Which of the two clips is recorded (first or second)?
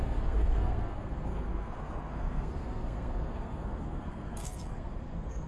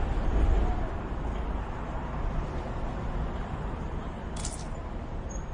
second